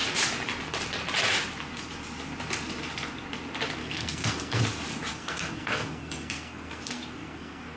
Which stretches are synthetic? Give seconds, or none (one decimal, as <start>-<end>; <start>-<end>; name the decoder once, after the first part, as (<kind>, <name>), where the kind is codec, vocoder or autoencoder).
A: 3.8-4.6 (codec, SNAC); 5.1-7.8